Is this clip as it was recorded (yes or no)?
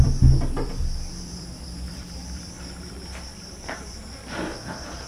no